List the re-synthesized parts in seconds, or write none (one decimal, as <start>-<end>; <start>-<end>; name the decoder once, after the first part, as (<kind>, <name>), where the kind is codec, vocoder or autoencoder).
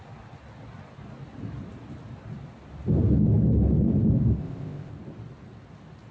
4.4-4.9 (codec, ZipCodec)